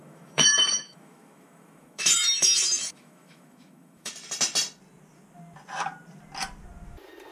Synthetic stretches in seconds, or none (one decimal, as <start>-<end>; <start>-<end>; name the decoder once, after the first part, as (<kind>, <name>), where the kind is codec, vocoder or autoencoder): 0.0-4.1 (autoencoder, DAC-VAE)